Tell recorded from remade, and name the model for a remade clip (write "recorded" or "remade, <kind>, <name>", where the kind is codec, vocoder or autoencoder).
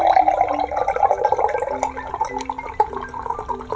recorded